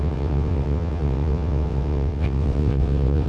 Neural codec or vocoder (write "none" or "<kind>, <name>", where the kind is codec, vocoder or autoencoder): vocoder, WaveNeXt